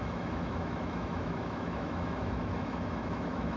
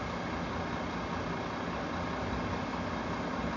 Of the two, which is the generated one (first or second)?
first